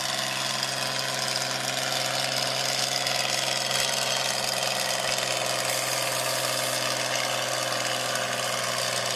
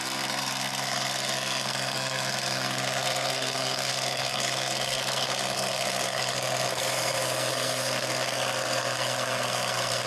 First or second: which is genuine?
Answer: first